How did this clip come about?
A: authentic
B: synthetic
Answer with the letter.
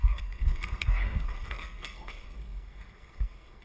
B